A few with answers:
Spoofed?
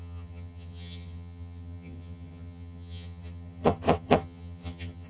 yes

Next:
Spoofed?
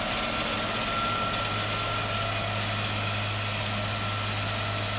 no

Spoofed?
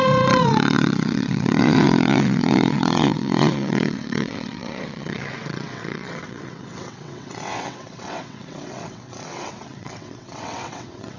yes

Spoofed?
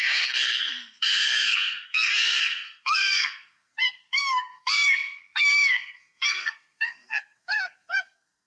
yes